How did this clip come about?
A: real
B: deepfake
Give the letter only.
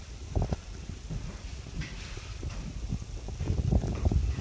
A